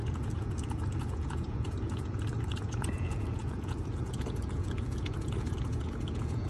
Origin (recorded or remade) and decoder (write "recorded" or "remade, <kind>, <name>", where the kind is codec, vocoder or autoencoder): remade, vocoder, Vocos